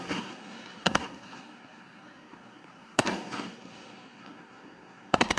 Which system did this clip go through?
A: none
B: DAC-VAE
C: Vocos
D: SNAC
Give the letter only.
D